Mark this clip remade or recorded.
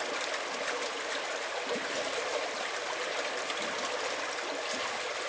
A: recorded